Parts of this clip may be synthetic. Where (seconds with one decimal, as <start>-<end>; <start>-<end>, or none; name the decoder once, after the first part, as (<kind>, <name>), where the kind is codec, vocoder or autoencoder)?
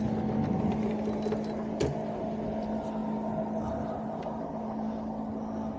none